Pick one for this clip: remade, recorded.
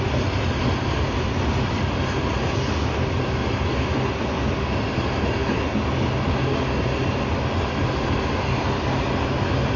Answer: recorded